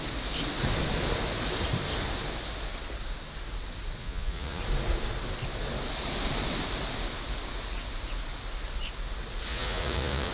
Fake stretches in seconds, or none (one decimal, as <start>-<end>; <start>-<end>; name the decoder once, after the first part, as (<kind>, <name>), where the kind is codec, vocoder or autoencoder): 4.0-4.6 (vocoder, Vocos); 9.5-10.3